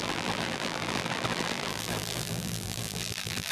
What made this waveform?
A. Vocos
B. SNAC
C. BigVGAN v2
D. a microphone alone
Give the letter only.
C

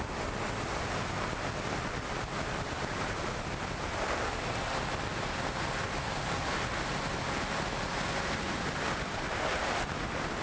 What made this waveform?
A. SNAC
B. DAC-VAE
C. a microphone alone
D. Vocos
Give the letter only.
C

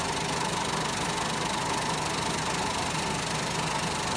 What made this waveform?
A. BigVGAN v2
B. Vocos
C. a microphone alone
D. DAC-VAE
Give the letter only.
C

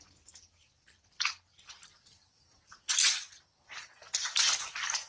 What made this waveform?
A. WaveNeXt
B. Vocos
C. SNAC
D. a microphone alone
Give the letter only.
D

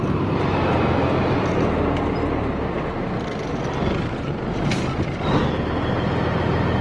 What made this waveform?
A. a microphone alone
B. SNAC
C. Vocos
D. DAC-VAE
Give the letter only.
A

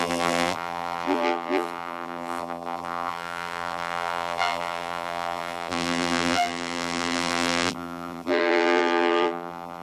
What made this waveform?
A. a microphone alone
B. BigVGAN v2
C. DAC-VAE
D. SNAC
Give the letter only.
B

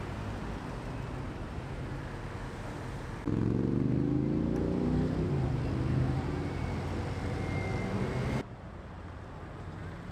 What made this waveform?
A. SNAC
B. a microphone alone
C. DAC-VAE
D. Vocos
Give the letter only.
B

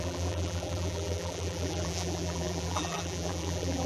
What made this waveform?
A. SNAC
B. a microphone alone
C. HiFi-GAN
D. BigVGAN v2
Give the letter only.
D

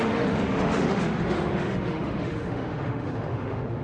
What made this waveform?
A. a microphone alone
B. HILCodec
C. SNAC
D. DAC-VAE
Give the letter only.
D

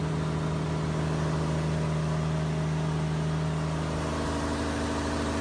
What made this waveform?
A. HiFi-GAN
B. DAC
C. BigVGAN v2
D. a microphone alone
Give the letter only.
D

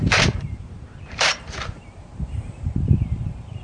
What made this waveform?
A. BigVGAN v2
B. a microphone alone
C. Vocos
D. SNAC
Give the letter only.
A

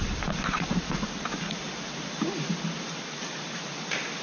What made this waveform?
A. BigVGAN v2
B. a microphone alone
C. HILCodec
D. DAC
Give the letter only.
B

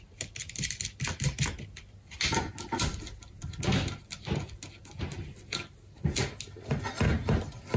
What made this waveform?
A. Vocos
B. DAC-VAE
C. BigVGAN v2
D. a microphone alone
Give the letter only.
D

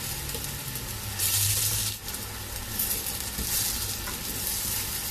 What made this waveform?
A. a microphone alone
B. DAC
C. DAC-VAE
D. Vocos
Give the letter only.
A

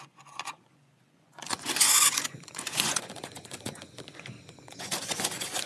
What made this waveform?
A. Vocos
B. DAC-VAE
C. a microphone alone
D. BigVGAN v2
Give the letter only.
A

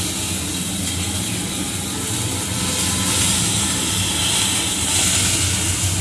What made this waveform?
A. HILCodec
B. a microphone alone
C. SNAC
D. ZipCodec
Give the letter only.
B